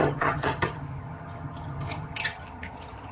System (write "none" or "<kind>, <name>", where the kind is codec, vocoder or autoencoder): vocoder, HiFi-GAN